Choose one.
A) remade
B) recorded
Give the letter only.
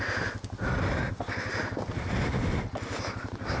B